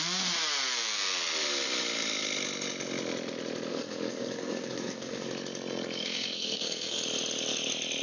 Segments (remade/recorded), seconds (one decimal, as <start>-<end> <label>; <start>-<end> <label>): 0.0-3.7 recorded; 3.7-5.3 remade; 5.3-6.0 recorded; 6.0-7.0 remade; 7.0-8.0 recorded